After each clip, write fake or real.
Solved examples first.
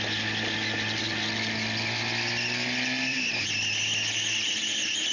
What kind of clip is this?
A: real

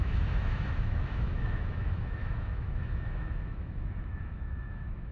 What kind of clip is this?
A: fake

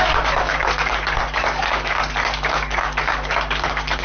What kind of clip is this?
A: fake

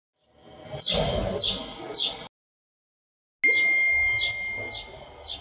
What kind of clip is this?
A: real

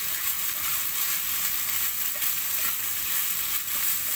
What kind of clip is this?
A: real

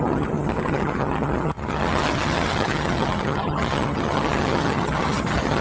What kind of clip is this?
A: fake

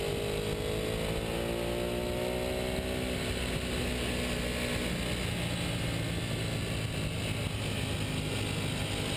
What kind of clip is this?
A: real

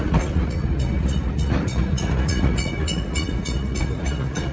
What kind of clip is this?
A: fake